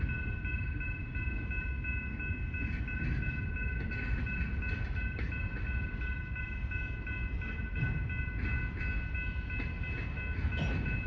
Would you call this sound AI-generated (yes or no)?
no